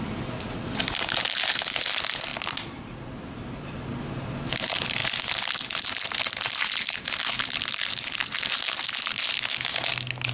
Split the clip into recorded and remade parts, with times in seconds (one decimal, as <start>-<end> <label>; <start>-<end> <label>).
0.0-10.3 recorded